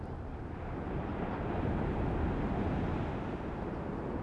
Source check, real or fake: real